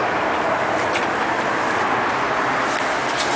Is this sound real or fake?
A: real